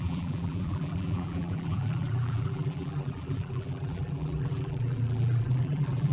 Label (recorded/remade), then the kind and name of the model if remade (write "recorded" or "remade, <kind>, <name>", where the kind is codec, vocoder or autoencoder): remade, vocoder, BigVGAN v2